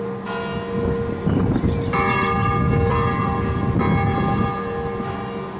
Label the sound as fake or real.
real